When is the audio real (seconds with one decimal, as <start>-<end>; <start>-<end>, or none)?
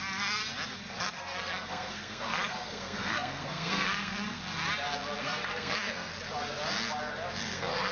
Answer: 0.4-1.0; 4.4-5.2; 6.1-7.4